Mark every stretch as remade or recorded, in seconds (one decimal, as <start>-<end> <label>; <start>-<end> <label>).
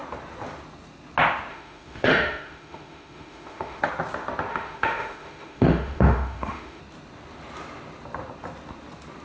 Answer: 0.0-1.5 recorded; 1.5-3.8 remade; 3.8-4.5 recorded; 4.5-6.8 remade; 6.8-9.2 recorded